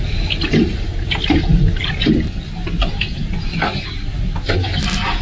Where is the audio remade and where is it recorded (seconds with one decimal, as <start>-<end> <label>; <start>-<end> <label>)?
0.0-5.2 recorded